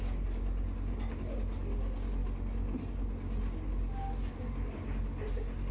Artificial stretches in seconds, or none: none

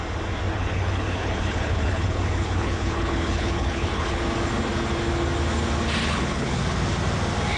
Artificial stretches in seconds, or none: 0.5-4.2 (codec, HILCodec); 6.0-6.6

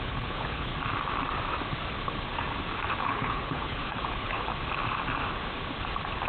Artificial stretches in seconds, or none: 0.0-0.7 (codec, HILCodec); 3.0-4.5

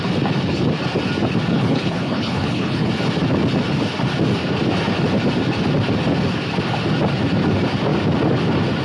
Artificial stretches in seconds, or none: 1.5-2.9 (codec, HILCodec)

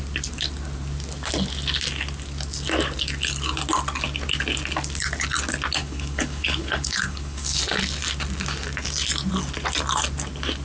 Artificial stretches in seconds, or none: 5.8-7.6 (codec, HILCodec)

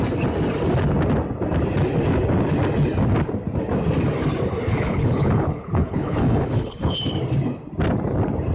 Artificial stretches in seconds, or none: 4.7-7.0 (codec, HILCodec)

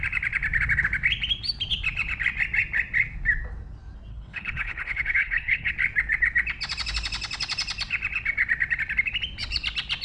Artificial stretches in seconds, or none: 4.1-5.7 (codec, HILCodec)

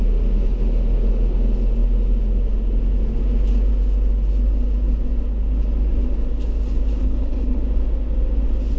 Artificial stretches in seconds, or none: 7.0-7.6 (codec, HILCodec)